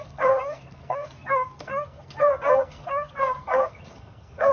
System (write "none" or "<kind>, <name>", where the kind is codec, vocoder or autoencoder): codec, SNAC